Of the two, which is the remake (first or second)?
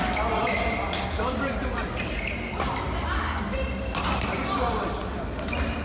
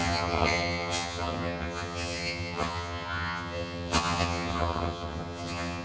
second